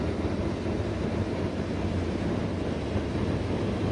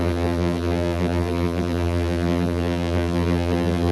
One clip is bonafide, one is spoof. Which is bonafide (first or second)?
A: first